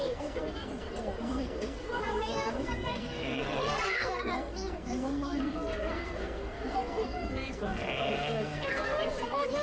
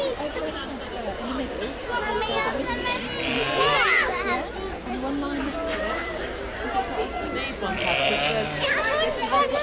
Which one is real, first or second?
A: second